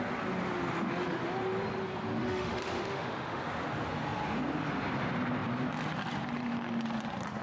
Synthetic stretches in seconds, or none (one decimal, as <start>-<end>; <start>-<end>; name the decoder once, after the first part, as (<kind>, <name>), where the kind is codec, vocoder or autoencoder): 2.2-3.4 (autoencoder, DAC-VAE)